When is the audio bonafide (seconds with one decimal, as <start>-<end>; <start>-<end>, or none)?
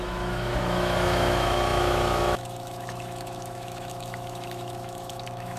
none